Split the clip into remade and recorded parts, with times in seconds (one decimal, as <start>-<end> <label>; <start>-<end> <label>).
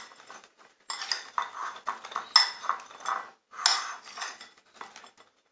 0.0-5.5 recorded